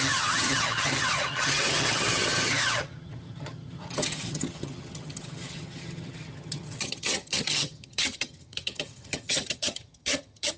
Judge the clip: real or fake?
fake